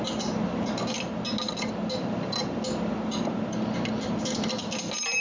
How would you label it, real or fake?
real